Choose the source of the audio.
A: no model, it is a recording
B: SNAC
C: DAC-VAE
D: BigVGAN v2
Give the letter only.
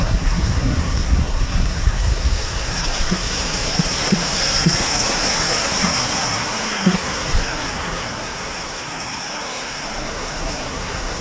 B